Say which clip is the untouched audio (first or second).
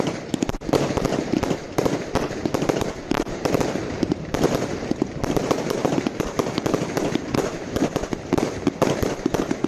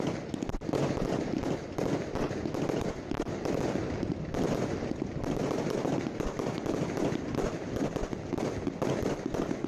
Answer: second